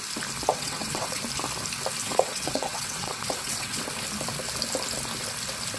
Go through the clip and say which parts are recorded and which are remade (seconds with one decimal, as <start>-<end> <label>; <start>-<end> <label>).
0.0-0.5 recorded; 0.5-1.2 remade; 1.2-2.0 recorded; 2.0-3.8 remade; 3.8-5.8 recorded